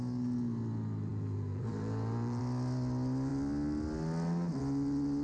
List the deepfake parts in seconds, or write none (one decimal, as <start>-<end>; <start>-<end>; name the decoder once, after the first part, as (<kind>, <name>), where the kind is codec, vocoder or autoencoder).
1.1-2.4 (vocoder, BigVGAN v2)